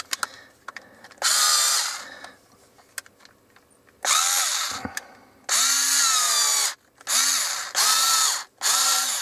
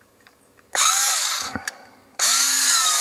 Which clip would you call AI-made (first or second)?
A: second